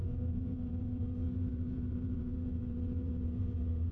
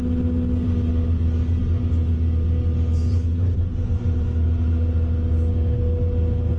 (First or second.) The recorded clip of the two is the second